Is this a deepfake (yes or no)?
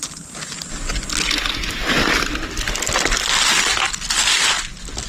no